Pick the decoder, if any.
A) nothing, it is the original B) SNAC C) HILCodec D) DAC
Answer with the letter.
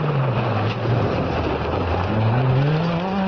A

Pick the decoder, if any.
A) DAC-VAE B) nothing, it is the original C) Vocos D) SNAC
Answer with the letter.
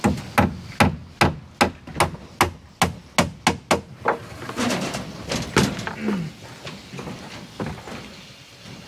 B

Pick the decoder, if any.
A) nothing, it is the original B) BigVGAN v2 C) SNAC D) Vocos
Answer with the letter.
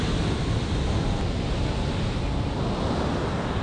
A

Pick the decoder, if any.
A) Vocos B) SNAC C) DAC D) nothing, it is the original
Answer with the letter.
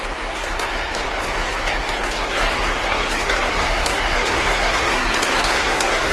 B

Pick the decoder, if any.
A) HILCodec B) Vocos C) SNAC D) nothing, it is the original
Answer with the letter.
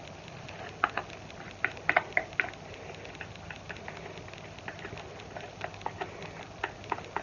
D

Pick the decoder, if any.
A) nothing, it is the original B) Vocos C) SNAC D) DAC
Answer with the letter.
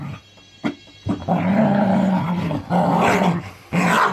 A